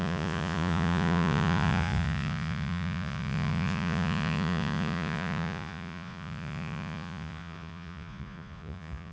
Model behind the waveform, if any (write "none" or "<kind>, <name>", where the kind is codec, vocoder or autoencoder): vocoder, Vocos